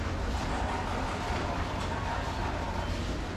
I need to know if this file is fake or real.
real